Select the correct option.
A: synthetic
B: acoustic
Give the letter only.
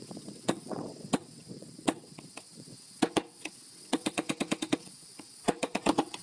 A